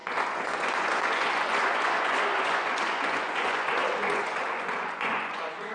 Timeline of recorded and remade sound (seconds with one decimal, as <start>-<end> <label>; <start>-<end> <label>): 0.0-5.7 remade